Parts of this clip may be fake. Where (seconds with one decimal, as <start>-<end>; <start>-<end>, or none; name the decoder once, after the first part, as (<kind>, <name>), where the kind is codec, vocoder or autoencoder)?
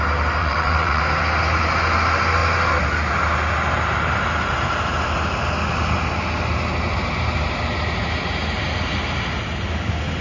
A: 0.4-1.0 (vocoder, WaveNeXt)